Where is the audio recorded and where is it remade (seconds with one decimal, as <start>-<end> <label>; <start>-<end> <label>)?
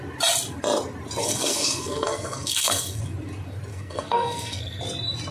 0.0-1.2 recorded; 1.2-3.0 remade; 3.0-3.7 recorded; 3.7-4.8 remade; 4.8-5.3 recorded